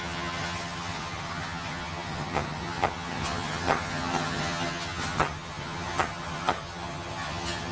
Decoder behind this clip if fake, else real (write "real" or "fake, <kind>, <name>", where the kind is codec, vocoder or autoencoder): fake, vocoder, HiFi-GAN